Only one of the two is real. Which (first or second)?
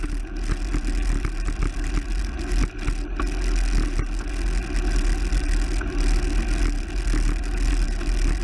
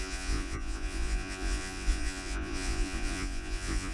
first